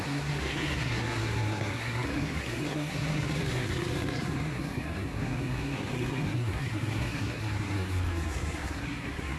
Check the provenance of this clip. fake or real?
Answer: fake